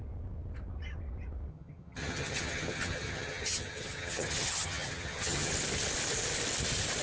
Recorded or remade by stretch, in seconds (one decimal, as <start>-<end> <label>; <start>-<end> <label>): 0.0-1.5 recorded; 1.5-5.5 remade; 5.5-7.0 recorded

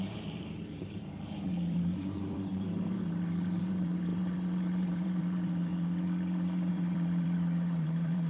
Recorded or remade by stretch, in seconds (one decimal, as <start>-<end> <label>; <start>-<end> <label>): 0.0-5.7 remade; 5.7-6.7 recorded; 6.7-8.3 remade

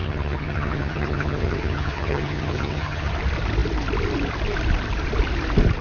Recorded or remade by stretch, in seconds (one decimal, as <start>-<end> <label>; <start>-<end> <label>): 0.0-3.1 remade; 3.1-5.8 recorded

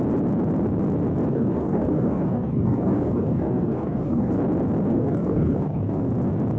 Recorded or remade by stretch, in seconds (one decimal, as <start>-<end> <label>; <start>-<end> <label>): 0.0-1.3 recorded; 1.3-4.3 remade; 4.3-4.9 recorded; 4.9-6.1 remade; 6.1-6.6 recorded